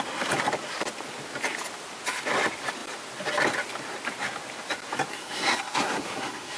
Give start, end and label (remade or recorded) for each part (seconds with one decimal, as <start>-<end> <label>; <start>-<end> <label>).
0.0-5.1 recorded; 5.1-6.6 remade